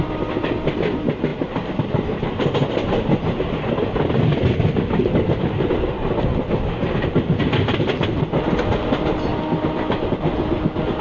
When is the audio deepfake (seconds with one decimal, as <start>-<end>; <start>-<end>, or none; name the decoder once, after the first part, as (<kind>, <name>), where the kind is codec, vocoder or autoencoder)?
none